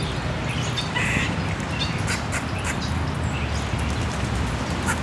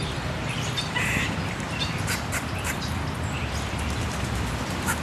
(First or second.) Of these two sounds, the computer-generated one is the second